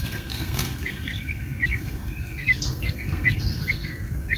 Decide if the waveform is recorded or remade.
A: remade